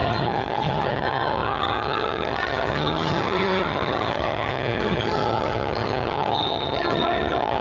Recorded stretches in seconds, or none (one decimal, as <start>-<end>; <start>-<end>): none